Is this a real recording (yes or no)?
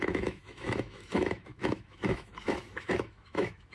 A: no